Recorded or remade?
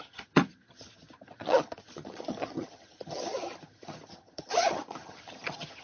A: remade